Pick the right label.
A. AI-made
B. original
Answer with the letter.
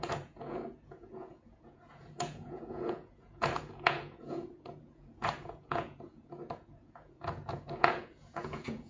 A